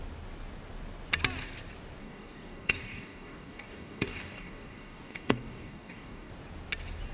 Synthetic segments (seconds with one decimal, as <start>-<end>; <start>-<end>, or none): 2.0-6.3